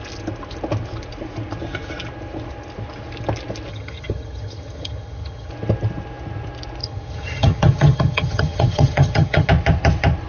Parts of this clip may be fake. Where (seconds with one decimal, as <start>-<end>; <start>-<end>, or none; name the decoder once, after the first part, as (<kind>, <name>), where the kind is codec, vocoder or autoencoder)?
3.7-5.5 (vocoder, HiFi-GAN); 6.8-9.5